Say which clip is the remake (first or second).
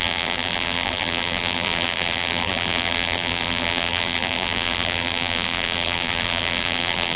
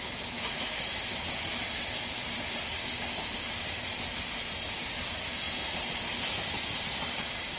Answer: first